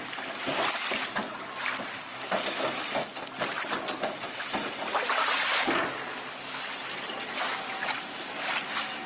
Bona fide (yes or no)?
yes